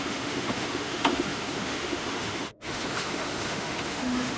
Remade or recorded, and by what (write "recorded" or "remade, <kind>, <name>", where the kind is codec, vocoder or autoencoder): remade, autoencoder, DAC-VAE